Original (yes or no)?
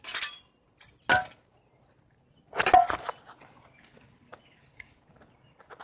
yes